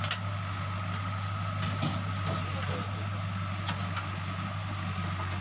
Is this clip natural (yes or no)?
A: yes